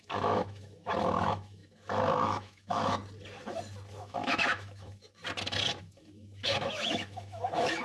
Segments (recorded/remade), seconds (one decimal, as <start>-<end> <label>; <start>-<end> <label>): 0.0-3.0 remade; 3.0-4.0 recorded; 4.0-5.2 remade; 5.2-5.8 recorded; 5.8-7.8 remade